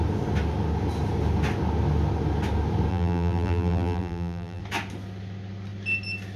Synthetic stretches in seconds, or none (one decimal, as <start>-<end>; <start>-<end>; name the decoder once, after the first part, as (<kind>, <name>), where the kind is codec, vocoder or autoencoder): 2.9-4.6 (vocoder, BigVGAN v2)